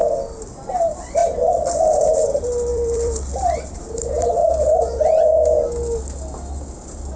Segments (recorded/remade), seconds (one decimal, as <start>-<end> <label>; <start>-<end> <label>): 0.0-0.7 recorded; 0.7-1.2 remade; 1.2-2.0 recorded; 2.0-4.4 remade; 4.4-7.2 recorded